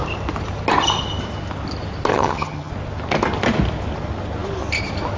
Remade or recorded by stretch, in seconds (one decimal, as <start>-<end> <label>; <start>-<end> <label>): 0.0-2.1 recorded; 2.1-2.7 remade; 2.7-5.2 recorded